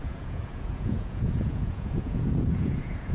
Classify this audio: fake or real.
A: fake